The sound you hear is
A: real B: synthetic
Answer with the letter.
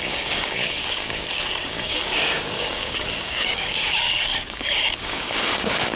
B